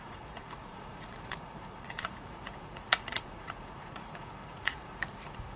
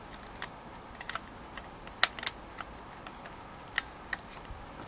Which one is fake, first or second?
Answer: first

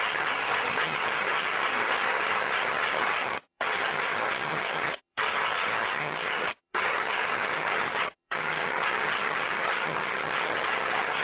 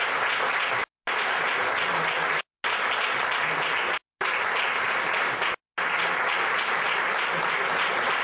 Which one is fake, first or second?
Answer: first